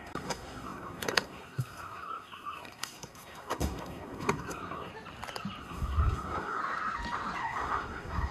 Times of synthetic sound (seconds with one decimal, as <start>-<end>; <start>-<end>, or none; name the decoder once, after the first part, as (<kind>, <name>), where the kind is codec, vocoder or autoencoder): 0.0-4.9 (codec, SNAC); 5.6-6.6; 7.4-8.3